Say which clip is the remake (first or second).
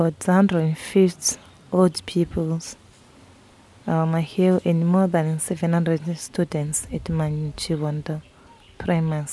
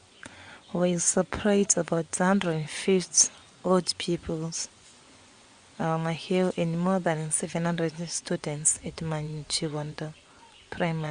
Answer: second